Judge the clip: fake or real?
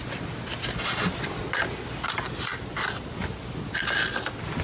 real